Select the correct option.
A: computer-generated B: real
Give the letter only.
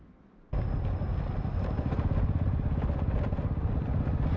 B